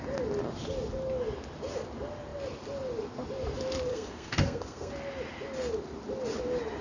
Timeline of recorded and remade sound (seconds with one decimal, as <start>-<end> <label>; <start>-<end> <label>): 0.0-3.9 recorded; 3.9-4.9 remade; 4.9-6.8 recorded